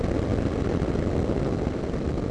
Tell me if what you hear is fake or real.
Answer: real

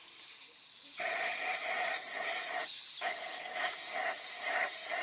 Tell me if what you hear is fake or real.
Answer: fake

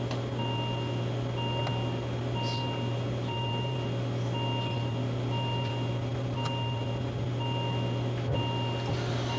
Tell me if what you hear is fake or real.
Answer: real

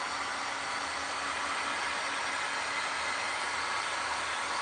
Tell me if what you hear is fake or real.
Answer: real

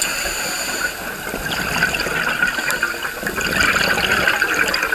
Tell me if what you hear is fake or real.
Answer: real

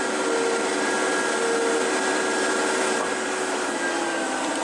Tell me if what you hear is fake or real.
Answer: real